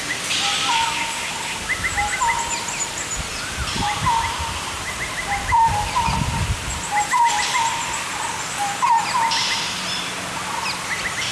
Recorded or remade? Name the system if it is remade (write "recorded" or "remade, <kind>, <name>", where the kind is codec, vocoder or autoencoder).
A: recorded